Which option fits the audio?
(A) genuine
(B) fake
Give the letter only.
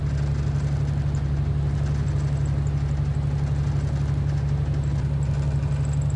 A